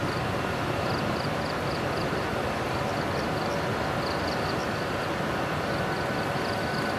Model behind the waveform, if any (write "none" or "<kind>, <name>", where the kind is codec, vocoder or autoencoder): none